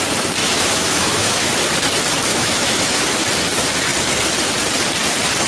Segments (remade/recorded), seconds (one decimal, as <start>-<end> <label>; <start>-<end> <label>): 0.0-0.4 recorded; 0.4-1.5 remade; 1.5-2.3 recorded; 2.3-3.0 remade; 3.0-5.5 recorded